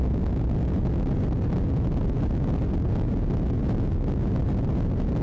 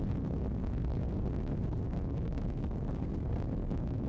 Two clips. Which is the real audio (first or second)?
first